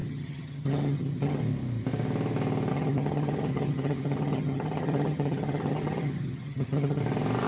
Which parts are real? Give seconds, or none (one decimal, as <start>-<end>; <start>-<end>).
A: 1.4-2.7; 7.0-7.5